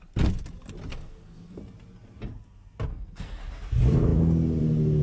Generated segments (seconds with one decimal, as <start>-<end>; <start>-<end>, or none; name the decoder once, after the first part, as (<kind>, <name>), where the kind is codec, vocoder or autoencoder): 0.9-1.6 (codec, SNAC); 2.9-3.4